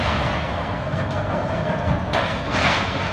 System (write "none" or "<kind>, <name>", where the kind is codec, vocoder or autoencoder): codec, SNAC